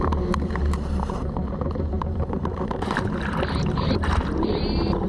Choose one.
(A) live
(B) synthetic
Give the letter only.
B